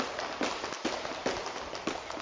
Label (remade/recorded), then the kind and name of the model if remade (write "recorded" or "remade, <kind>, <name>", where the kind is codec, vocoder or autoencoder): recorded